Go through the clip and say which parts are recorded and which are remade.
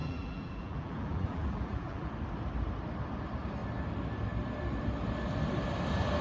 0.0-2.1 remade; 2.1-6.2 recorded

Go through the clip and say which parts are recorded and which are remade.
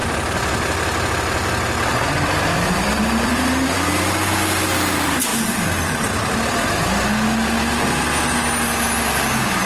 0.0-2.5 recorded; 2.5-4.4 remade; 4.4-5.3 recorded; 5.3-6.9 remade; 6.9-9.7 recorded